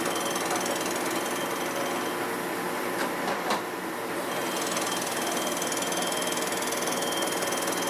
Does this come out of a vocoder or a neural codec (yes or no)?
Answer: no